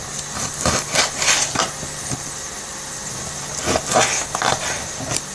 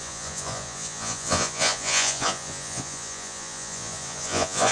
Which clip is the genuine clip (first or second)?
first